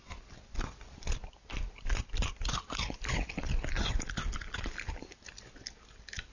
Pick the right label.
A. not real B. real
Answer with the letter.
B